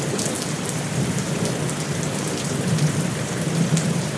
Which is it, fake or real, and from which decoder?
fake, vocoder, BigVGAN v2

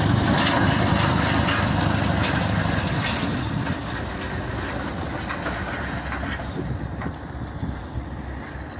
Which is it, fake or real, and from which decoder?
real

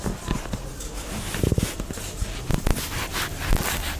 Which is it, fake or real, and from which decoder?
real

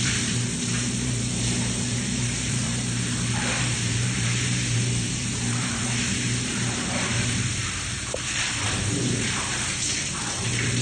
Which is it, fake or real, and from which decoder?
fake, vocoder, BigVGAN v2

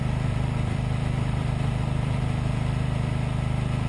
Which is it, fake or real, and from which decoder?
fake, vocoder, BigVGAN v2